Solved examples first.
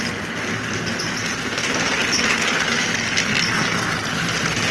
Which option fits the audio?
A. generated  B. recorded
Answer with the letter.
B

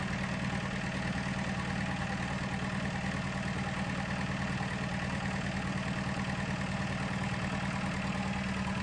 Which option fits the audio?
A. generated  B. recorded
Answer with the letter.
B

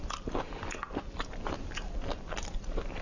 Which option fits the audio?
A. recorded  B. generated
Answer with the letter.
A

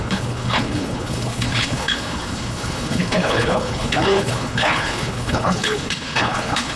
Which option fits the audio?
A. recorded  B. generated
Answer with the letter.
B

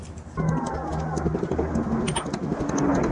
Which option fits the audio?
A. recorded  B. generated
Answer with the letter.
A